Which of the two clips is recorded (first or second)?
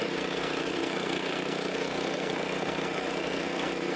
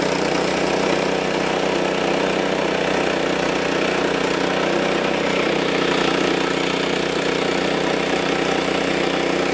second